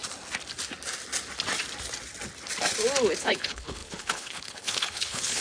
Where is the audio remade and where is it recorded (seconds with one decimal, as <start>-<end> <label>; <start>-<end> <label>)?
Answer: 0.0-3.2 recorded; 3.2-5.4 remade